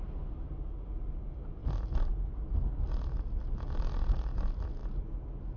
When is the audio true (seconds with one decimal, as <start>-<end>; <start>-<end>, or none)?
0.0-5.6